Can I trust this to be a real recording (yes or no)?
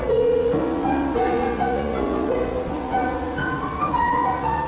no